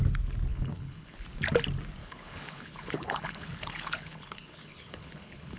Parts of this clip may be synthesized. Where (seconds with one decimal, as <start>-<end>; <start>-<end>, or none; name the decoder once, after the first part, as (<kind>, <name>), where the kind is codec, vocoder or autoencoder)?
0.5-1.2 (codec, HILCodec); 2.0-5.6